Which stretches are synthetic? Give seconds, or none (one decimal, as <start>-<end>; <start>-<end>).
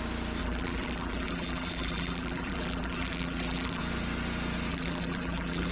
0.4-3.8; 4.7-5.7